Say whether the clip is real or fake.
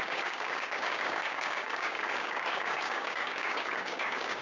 fake